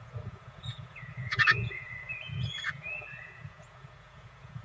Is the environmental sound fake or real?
fake